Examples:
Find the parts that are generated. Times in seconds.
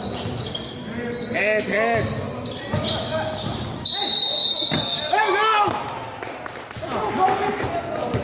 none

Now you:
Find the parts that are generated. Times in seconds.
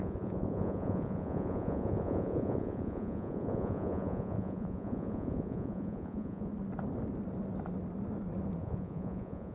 0.0-6.5 (vocoder, Vocos); 8.6-9.5